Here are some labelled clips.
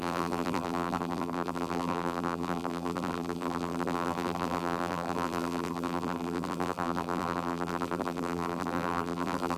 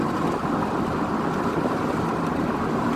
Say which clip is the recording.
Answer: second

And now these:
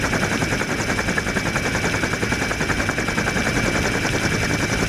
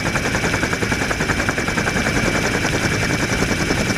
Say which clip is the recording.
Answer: first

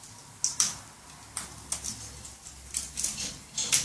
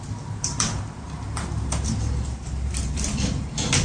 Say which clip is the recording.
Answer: first